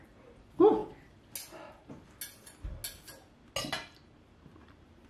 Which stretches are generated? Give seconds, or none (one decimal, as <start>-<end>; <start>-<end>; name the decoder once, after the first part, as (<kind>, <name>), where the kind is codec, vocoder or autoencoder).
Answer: none